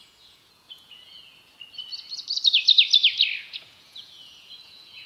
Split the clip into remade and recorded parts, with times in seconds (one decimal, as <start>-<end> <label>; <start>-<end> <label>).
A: 0.0-1.3 remade; 1.3-3.4 recorded; 3.4-5.1 remade